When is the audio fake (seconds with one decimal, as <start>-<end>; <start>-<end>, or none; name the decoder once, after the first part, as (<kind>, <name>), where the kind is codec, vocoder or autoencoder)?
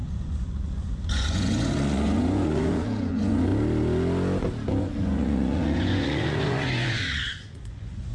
0.0-3.5 (vocoder, Vocos); 4.8-8.1